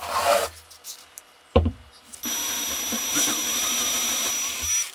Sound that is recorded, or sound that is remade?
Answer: recorded